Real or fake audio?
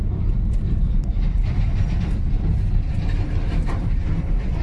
real